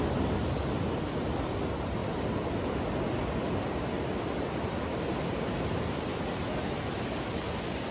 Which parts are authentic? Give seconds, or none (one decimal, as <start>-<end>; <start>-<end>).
0.0-2.0; 2.5-7.9